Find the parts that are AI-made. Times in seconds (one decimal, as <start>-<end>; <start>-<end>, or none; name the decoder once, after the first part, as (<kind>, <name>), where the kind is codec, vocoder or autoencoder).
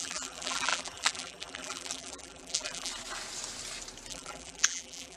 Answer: 0.0-2.9 (vocoder, BigVGAN v2); 4.1-5.2